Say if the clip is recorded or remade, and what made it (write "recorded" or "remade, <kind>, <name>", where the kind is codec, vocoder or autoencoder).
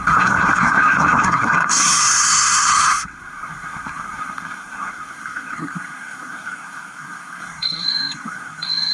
remade, codec, SNAC